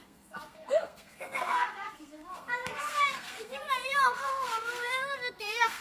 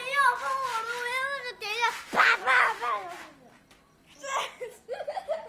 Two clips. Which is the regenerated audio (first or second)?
first